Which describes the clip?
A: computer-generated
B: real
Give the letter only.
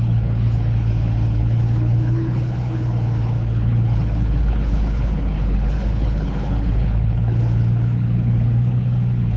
A